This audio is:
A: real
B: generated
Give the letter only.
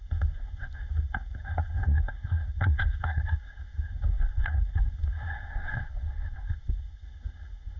B